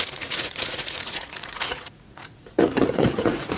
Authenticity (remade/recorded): remade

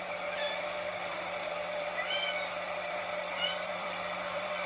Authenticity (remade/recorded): remade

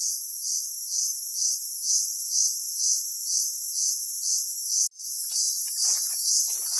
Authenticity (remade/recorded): recorded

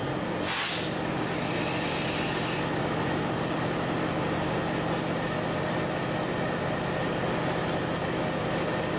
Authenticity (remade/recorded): recorded